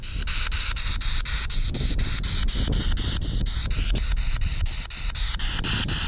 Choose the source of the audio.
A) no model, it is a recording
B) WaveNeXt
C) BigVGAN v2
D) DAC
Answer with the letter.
A